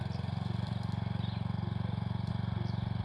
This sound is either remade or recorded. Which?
recorded